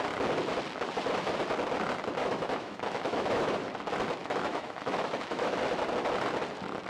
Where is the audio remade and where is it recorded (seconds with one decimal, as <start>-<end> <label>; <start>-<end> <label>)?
0.0-2.2 recorded; 2.2-3.5 remade; 3.5-4.2 recorded; 4.2-5.5 remade; 5.5-6.9 recorded